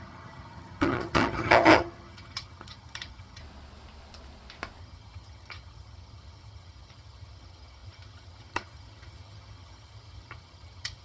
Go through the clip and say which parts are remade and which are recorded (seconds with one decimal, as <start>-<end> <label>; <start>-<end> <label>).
0.0-3.4 remade; 3.4-4.8 recorded; 4.8-11.0 remade